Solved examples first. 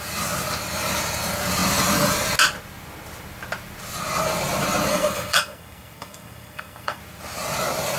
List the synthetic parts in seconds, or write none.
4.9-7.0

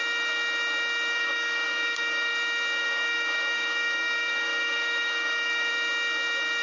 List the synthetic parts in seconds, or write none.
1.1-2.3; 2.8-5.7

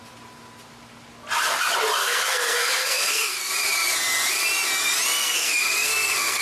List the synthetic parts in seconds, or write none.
2.0-3.5; 5.2-6.4